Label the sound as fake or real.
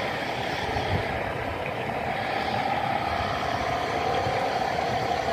real